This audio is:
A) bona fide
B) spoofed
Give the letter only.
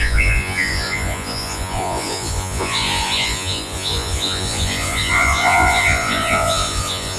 B